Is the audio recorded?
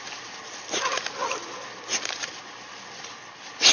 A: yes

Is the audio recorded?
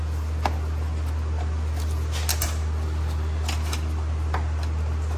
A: yes